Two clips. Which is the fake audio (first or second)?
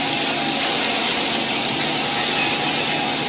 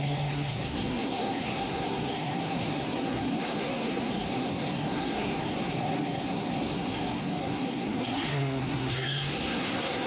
second